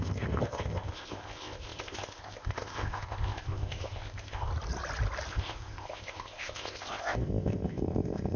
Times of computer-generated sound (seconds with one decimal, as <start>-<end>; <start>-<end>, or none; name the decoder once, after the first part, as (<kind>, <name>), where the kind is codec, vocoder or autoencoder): 0.0-4.5 (codec, ZipCodec); 5.3-8.4